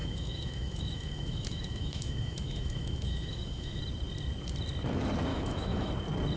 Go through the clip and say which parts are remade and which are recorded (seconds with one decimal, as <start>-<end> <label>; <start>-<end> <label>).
0.0-3.8 remade; 3.8-5.3 recorded; 5.3-5.9 remade; 5.9-6.4 recorded